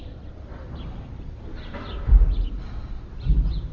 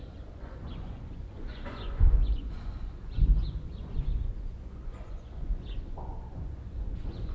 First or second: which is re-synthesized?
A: second